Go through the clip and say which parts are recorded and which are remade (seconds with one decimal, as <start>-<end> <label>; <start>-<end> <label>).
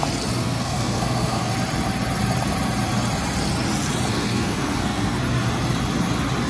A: 0.0-0.4 recorded; 0.4-1.5 remade; 1.5-4.1 recorded; 4.1-5.2 remade; 5.2-6.5 recorded